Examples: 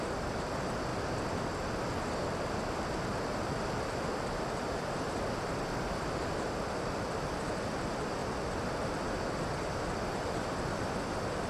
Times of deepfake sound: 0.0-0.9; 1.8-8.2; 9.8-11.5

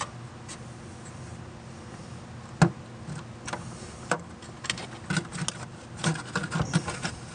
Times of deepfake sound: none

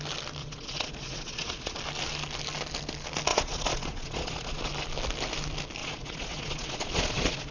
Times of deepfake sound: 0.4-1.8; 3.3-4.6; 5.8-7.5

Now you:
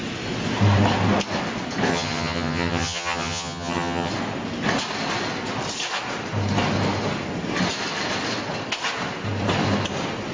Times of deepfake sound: 1.9-4.1

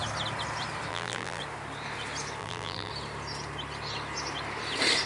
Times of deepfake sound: 0.9-1.4; 2.4-2.9

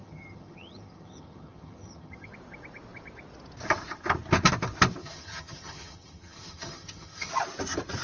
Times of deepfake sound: 0.0-2.3; 5.0-7.3

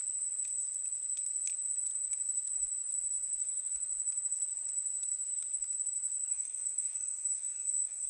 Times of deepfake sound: 6.3-8.1

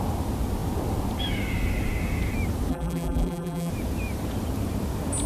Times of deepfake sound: 2.7-3.7